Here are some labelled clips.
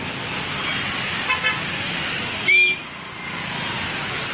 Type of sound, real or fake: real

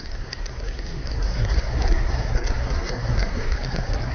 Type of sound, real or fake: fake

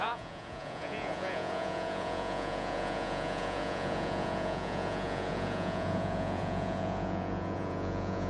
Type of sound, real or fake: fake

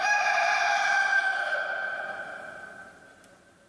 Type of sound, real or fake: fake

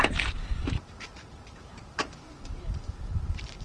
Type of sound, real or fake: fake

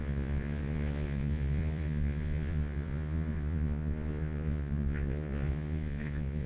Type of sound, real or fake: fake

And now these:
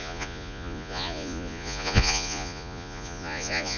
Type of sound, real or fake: fake